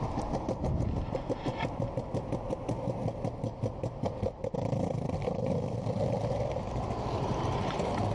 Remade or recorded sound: recorded